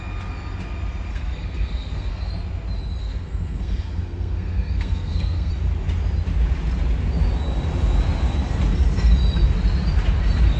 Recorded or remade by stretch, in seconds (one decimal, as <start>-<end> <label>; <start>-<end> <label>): 0.0-1.1 recorded; 1.1-2.3 remade; 2.3-3.0 recorded; 3.0-5.5 remade; 5.5-10.6 recorded